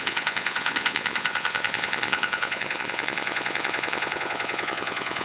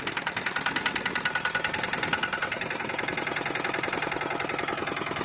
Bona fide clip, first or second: second